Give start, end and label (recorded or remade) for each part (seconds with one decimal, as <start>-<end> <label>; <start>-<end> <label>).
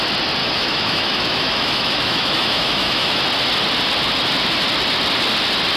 0.0-0.4 recorded; 0.4-3.2 remade; 3.2-5.8 recorded